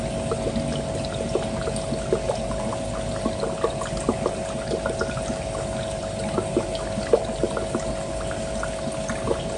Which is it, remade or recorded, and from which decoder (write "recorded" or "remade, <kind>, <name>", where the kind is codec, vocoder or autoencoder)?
recorded